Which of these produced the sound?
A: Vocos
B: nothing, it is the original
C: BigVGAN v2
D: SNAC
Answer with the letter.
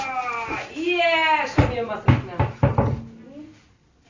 B